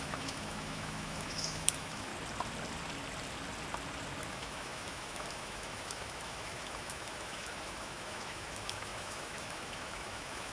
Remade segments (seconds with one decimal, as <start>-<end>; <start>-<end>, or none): 0.0-2.1; 4.3-10.5